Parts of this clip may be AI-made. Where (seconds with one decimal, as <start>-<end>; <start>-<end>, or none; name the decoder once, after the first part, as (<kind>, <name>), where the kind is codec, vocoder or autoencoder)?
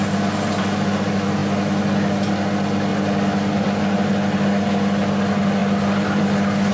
5.6-6.2 (vocoder, BigVGAN v2)